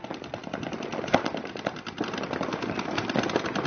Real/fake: real